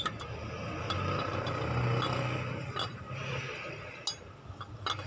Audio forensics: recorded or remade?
recorded